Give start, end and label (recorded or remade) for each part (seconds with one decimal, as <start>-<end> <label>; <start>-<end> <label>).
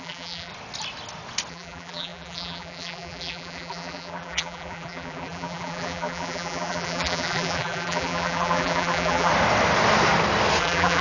0.0-0.5 remade; 0.5-1.5 recorded; 1.5-9.3 remade; 9.3-10.6 recorded; 10.6-11.0 remade